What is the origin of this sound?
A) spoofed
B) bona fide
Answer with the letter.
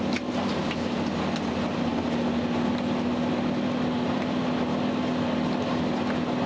B